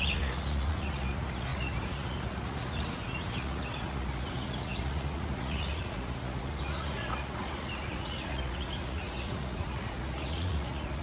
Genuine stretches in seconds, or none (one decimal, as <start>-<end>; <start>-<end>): none